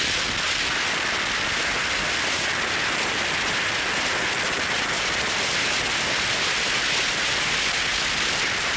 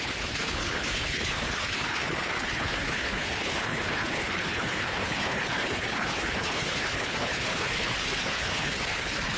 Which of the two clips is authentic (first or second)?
first